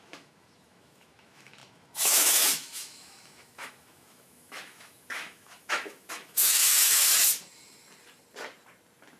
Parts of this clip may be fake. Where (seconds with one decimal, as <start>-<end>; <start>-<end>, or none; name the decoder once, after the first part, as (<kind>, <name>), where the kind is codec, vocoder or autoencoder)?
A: 0.0-7.1 (autoencoder, DAC-VAE)